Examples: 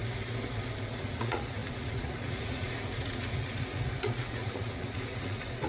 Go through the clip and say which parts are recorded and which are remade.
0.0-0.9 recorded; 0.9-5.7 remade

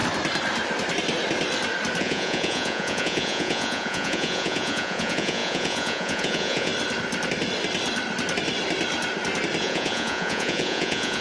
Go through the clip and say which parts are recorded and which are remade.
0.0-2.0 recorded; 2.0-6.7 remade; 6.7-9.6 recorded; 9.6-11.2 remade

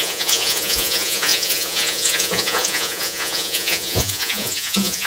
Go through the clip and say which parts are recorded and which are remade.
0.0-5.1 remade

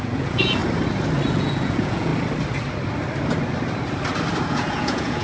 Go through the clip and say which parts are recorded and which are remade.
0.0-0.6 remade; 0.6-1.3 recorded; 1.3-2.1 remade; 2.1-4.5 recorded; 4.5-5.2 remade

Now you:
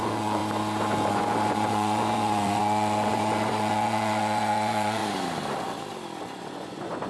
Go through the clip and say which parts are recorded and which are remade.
0.0-0.4 remade; 0.4-1.1 recorded; 1.1-5.0 remade; 5.0-6.2 recorded; 6.2-7.1 remade